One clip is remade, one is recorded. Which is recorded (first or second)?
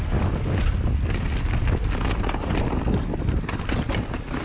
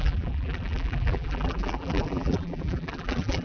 first